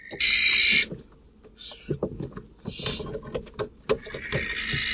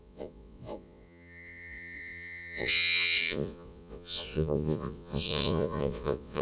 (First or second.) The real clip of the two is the first